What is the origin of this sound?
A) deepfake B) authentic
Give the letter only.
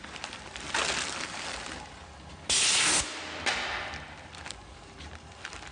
B